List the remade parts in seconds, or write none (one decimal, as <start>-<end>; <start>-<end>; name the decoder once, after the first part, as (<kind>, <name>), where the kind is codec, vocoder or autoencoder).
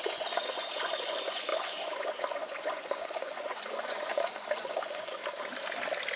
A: 0.0-5.2 (vocoder, Vocos)